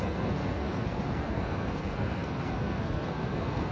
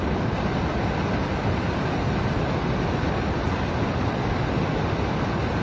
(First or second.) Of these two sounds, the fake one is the first